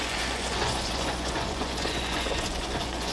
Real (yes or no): no